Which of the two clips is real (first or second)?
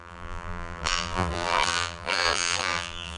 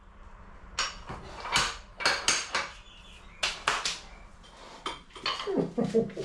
second